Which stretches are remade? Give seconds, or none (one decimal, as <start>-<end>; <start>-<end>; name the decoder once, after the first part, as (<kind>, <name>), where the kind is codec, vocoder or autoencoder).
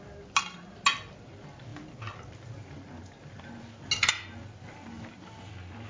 none